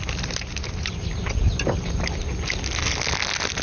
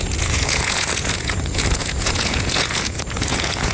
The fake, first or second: second